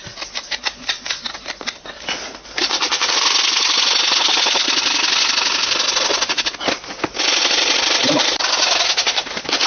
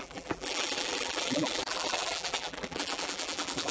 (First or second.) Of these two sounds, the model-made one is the second